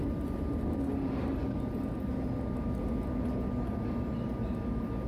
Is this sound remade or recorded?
recorded